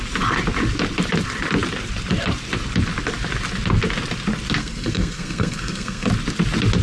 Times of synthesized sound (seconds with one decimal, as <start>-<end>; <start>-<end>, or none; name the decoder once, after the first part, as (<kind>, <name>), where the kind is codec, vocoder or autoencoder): 4.6-6.1 (codec, SNAC)